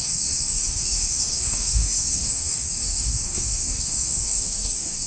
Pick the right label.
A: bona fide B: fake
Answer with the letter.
B